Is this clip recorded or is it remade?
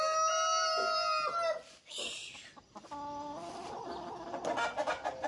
recorded